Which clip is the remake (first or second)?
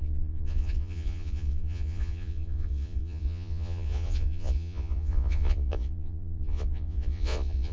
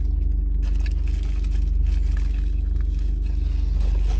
first